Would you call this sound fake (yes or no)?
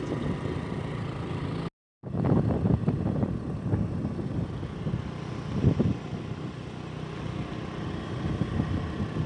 no